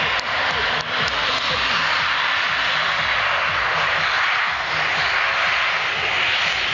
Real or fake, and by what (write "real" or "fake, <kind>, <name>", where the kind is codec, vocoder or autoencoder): real